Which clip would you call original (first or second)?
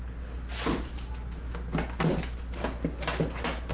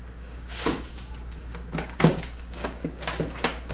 first